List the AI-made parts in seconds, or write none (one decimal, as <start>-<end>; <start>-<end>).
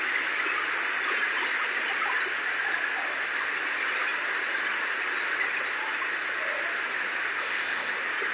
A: 7.4-7.9